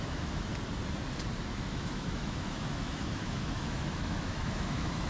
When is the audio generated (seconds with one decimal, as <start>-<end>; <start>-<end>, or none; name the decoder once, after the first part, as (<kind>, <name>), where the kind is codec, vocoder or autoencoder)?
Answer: 0.0-0.5 (autoencoder, DAC-VAE); 1.5-5.1